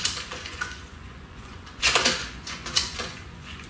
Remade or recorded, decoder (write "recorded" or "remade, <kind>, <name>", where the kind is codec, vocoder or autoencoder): remade, vocoder, Vocos